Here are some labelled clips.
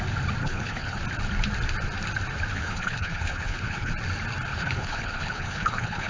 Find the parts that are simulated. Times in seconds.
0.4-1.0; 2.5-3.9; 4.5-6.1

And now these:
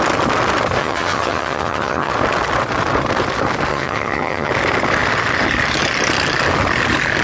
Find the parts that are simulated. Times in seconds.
0.8-2.1; 3.7-4.5

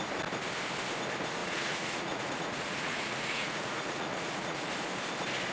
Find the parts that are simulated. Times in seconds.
1.4-4.7